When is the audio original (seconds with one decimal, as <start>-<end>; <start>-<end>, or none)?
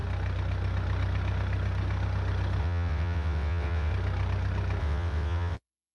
0.0-2.6; 3.9-4.8